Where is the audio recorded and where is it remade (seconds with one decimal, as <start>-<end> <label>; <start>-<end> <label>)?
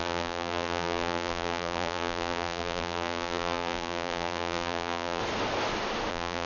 0.0-5.2 remade; 5.2-6.1 recorded; 6.1-6.5 remade